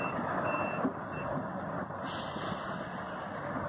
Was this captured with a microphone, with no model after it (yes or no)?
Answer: yes